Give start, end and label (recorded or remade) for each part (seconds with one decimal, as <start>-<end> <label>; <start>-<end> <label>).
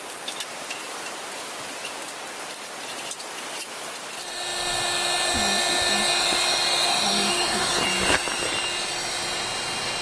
0.0-6.9 recorded; 6.9-7.7 remade; 7.7-10.0 recorded